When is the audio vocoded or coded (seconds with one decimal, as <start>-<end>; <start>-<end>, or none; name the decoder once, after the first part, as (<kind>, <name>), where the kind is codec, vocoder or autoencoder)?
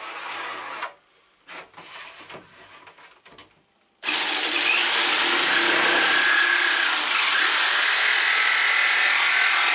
none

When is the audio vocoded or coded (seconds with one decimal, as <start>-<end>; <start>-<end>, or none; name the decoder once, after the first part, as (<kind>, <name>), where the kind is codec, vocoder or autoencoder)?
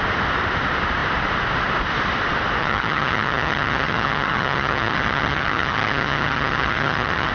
2.6-7.3 (vocoder, HiFi-GAN)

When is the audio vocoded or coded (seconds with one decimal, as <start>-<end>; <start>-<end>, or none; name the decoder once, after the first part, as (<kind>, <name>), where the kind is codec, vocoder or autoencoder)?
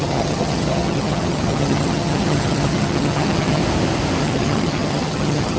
0.0-3.6 (vocoder, HiFi-GAN); 4.2-5.6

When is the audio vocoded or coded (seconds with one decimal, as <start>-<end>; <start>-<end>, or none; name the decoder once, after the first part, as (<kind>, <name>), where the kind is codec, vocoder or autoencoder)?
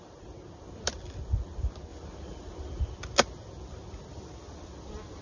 none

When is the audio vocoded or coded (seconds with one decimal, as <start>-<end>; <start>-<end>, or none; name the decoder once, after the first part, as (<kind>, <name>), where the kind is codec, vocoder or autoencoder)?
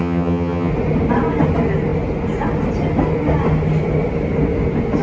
0.0-0.7 (vocoder, HiFi-GAN)